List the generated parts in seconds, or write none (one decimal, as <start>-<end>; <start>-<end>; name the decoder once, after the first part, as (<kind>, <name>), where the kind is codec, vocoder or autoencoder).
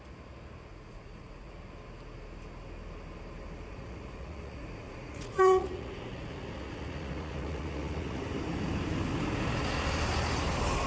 0.7-1.5 (vocoder, Vocos); 3.7-8.2